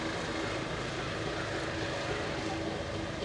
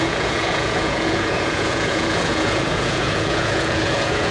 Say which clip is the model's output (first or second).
second